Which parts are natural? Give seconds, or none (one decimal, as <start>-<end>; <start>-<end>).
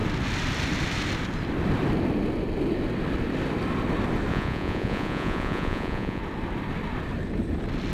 0.0-4.3; 6.2-7.9